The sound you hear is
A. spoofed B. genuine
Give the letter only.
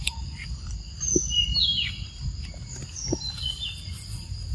B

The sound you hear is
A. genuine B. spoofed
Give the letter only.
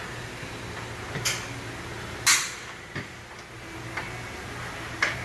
A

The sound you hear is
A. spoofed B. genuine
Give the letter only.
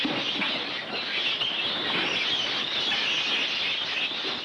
B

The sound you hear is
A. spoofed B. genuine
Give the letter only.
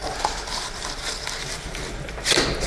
B